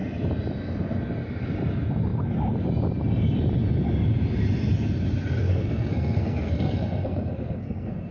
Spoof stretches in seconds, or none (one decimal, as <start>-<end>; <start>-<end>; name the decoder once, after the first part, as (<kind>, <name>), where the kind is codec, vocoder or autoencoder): 5.4-8.1 (codec, SNAC)